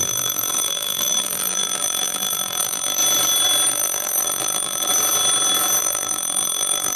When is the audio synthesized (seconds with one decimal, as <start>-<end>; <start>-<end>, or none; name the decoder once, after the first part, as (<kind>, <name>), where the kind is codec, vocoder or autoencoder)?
0.0-3.0 (vocoder, BigVGAN v2); 3.7-4.9; 5.8-7.0